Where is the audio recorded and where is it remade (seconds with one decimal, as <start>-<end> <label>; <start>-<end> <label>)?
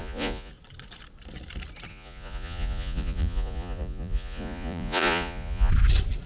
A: 0.0-0.5 remade; 0.5-1.9 recorded; 1.9-5.7 remade; 5.7-6.3 recorded